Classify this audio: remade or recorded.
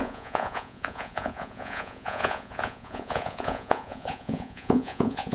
remade